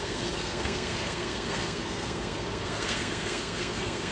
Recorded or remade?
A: remade